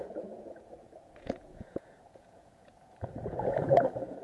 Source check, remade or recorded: remade